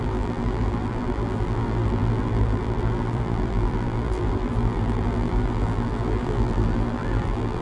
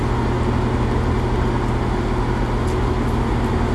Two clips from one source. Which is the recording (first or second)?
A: second